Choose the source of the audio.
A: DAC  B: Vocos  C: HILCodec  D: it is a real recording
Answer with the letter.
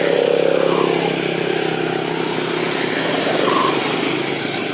D